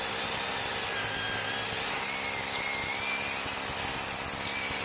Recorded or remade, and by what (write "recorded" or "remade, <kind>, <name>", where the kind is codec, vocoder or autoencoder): recorded